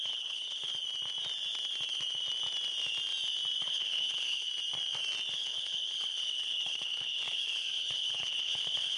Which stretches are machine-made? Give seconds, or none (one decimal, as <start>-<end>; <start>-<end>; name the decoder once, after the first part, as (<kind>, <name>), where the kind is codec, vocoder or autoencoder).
0.0-0.7 (codec, HILCodec); 3.6-4.5; 5.3-9.0